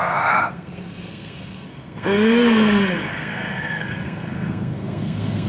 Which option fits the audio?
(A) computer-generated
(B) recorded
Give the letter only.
A